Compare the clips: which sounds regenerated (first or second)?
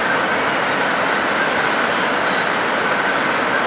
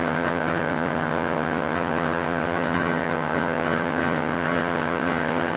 second